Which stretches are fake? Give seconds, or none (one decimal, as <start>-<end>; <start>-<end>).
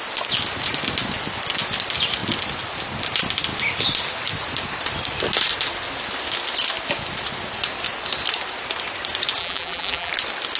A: 9.4-10.1